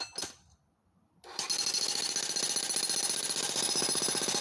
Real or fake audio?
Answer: real